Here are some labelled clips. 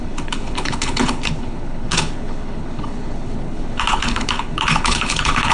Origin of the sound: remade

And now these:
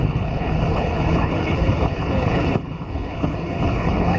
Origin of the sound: remade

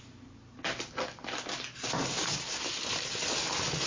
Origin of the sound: recorded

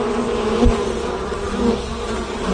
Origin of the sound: recorded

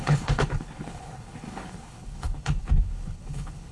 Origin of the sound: remade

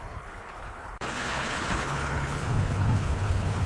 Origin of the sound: remade